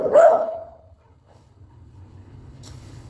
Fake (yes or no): yes